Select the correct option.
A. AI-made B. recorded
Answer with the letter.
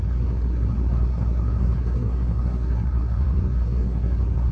A